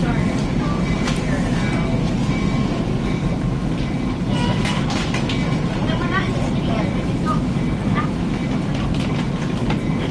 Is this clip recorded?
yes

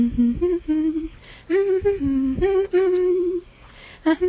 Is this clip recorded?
yes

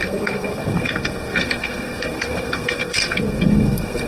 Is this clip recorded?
no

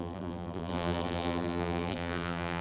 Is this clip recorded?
no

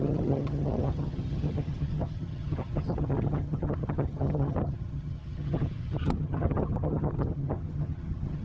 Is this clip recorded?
no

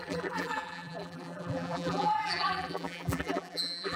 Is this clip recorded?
no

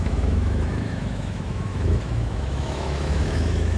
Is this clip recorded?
no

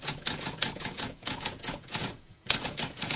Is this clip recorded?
no